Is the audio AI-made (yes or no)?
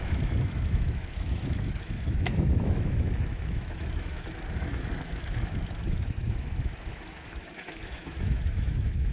yes